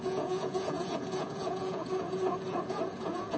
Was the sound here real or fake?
fake